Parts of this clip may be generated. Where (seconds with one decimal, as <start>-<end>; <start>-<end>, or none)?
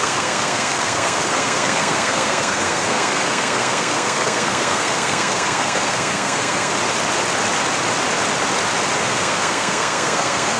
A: 0.0-6.7; 9.0-10.6